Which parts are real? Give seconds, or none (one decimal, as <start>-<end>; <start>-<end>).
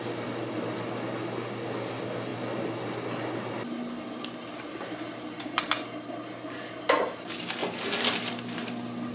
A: 0.0-9.1